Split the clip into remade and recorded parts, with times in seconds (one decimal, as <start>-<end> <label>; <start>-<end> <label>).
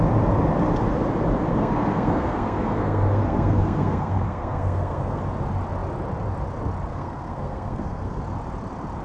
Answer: 0.0-1.5 recorded; 1.5-5.2 remade; 5.2-6.9 recorded; 6.9-8.2 remade; 8.2-9.0 recorded